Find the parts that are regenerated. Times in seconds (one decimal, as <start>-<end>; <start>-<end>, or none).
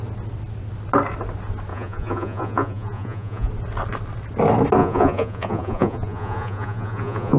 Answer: 1.7-3.5; 4.8-7.4